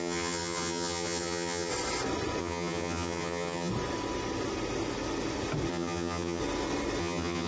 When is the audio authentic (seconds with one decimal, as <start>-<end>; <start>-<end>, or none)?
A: 1.7-2.4; 3.7-5.7; 6.4-7.0